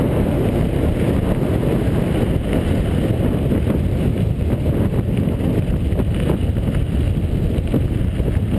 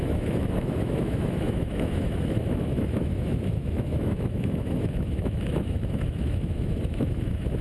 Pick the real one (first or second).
first